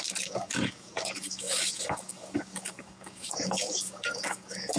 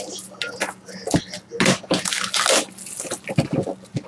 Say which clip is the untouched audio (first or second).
second